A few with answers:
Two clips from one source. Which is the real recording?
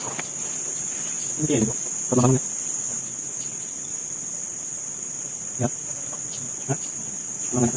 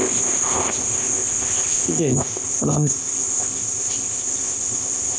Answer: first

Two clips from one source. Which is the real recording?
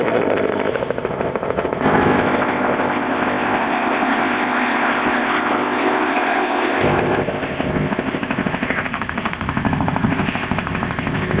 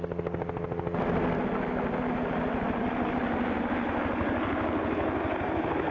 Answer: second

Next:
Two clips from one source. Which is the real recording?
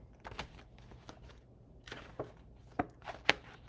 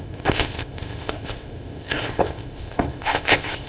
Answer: first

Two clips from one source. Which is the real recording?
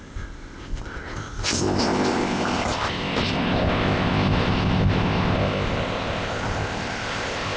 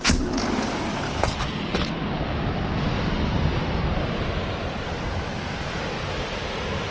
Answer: second